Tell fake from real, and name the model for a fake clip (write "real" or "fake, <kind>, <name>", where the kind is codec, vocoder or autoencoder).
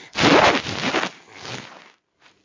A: real